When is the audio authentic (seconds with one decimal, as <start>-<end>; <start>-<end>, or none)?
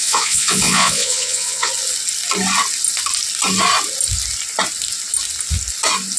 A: 1.7-6.2